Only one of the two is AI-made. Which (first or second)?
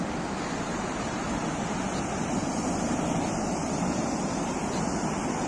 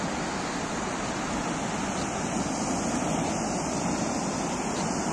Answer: first